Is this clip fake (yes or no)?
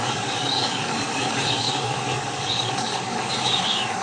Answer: yes